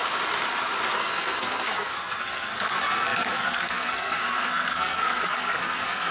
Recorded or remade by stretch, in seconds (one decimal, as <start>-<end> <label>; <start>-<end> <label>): 0.0-0.9 recorded; 0.9-6.1 remade